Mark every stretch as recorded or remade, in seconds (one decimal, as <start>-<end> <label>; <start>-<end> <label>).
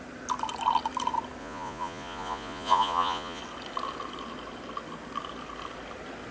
0.0-1.4 recorded; 1.4-3.4 remade; 3.4-6.3 recorded